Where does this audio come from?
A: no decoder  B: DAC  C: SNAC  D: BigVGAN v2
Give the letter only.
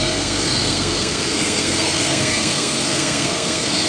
C